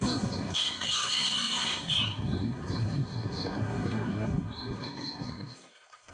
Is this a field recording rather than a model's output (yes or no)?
no